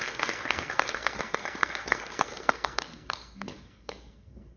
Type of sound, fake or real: fake